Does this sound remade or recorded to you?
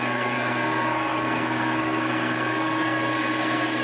remade